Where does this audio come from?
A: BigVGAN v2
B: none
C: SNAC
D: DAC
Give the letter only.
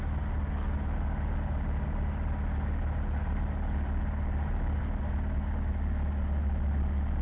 B